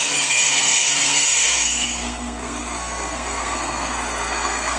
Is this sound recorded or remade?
remade